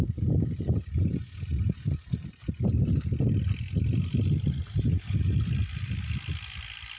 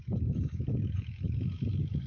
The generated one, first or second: second